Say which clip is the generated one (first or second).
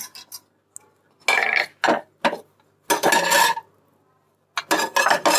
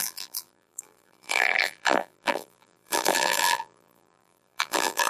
second